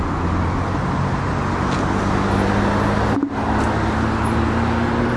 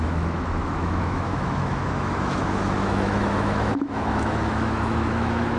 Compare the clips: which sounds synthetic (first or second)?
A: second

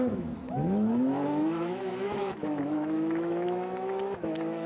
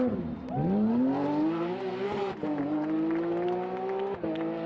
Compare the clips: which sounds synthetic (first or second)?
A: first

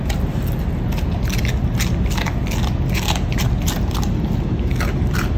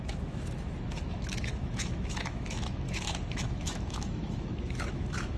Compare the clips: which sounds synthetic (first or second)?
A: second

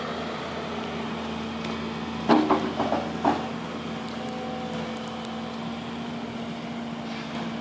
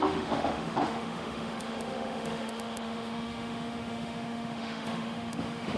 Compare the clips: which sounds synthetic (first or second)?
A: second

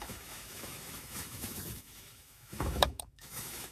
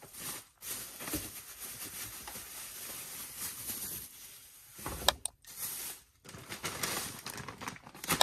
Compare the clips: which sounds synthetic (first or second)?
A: first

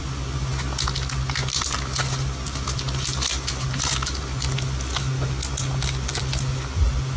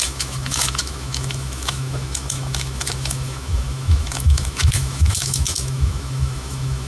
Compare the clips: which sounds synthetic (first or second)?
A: second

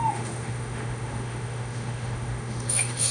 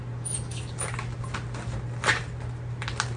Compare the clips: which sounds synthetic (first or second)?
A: first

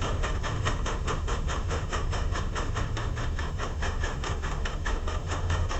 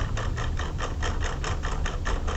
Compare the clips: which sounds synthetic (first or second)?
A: first